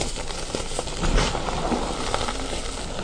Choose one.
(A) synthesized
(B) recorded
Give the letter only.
B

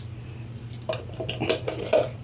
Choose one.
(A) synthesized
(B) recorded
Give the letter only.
B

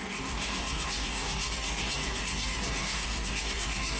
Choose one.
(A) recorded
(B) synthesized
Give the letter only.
B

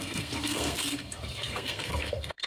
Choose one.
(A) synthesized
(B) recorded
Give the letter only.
A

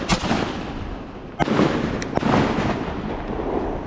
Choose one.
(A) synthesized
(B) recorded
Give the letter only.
B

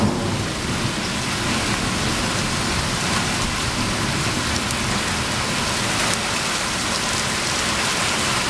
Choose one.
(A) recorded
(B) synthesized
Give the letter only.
A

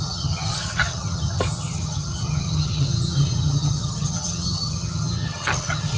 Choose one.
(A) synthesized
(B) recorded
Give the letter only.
A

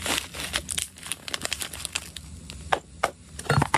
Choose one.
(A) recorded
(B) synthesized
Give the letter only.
A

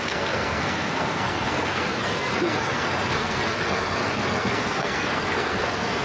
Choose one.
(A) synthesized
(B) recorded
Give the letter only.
A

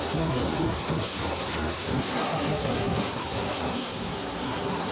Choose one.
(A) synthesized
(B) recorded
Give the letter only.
A